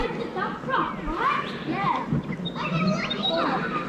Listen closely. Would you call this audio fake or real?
real